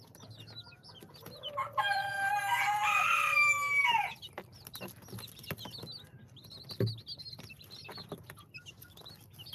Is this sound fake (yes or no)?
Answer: no